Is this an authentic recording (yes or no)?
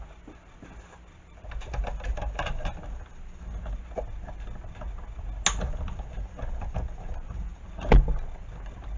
yes